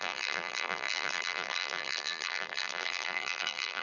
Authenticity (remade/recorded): remade